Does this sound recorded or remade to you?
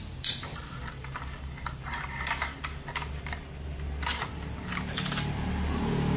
recorded